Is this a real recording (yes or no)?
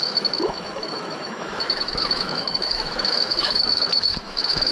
no